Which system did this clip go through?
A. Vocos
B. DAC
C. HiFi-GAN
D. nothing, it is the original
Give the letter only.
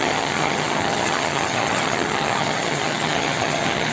C